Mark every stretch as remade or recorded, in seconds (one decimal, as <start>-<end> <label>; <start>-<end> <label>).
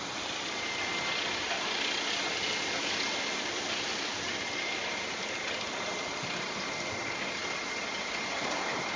0.0-2.8 recorded; 2.8-6.4 remade; 6.4-7.4 recorded; 7.4-8.2 remade; 8.2-9.0 recorded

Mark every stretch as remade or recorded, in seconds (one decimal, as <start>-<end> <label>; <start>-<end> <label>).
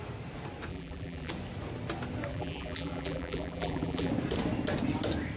0.0-0.7 recorded; 0.7-1.3 remade; 1.3-2.3 recorded; 2.3-4.1 remade; 4.1-5.4 recorded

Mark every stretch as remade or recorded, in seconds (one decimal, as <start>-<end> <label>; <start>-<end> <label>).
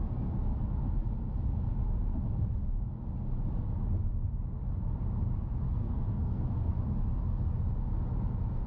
0.0-5.8 recorded; 5.8-6.7 remade; 6.7-8.7 recorded